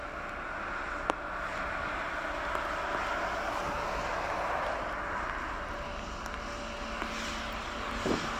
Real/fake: real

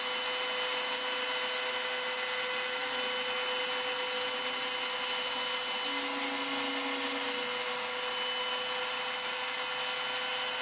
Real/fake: real